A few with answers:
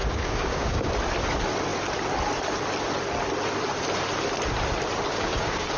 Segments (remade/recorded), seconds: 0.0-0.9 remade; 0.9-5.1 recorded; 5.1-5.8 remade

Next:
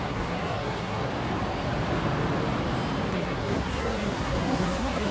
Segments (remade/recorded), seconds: 0.0-1.1 remade; 1.1-3.1 recorded; 3.1-5.1 remade

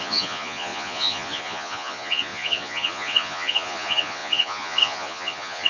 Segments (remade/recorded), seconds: 0.0-5.7 remade

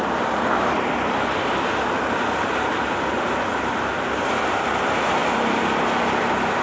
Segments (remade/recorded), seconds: 0.0-2.8 remade; 2.8-6.6 recorded